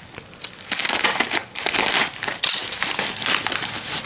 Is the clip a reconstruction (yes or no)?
yes